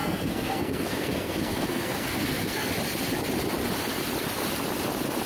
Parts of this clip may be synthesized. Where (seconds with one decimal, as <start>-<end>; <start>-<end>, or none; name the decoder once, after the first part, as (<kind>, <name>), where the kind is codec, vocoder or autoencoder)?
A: 0.0-2.7 (codec, SNAC)